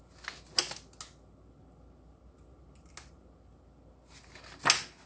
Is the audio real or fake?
real